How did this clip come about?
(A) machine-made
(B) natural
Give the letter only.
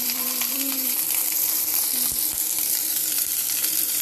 A